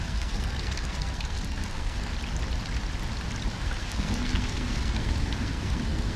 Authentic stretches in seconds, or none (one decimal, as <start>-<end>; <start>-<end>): 2.1-3.5